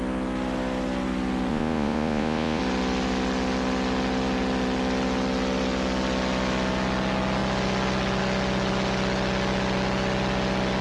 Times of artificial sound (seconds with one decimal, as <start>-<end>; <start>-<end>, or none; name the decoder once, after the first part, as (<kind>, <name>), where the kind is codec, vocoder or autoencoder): 1.5-2.6 (vocoder, Vocos)